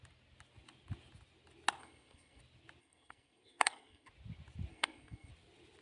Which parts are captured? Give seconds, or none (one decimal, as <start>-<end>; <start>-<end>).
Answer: 0.0-1.8; 2.4-2.8; 4.1-4.7; 5.3-5.8